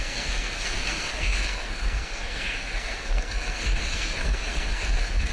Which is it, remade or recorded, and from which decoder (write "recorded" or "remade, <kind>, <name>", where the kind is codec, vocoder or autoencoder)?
remade, codec, SNAC